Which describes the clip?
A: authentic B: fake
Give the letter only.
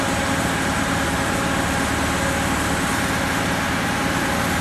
A